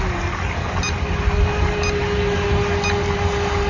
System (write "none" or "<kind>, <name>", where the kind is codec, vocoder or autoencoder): none